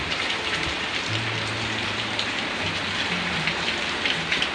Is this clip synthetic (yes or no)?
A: yes